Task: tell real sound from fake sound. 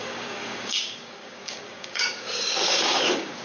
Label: fake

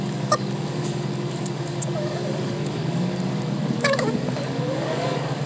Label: fake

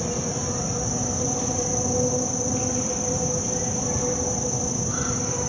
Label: real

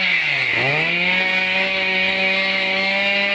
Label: fake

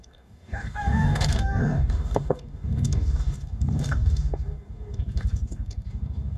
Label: fake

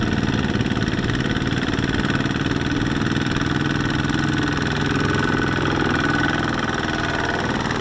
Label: real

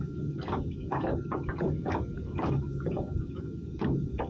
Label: fake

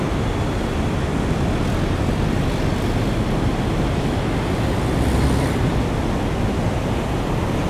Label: real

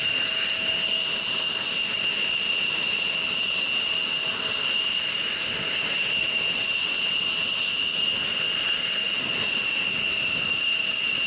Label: real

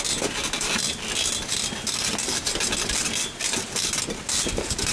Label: real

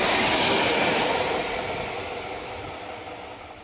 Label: real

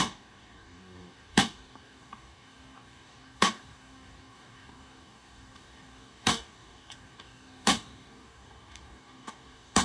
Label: fake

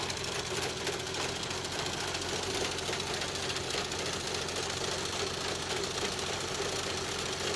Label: real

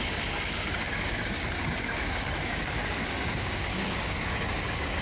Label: fake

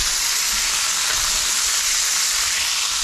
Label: real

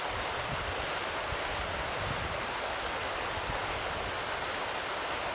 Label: real